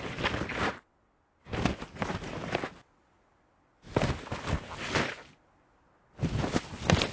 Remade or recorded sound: recorded